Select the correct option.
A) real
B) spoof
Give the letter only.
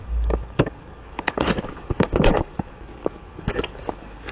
B